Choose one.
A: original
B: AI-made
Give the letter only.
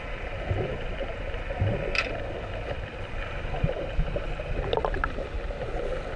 A